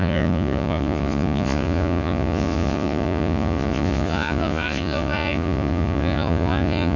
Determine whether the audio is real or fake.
fake